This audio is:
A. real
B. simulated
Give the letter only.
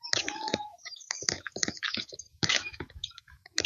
B